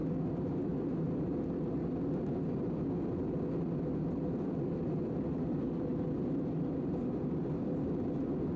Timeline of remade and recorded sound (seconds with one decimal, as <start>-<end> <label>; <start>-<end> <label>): 0.0-8.6 recorded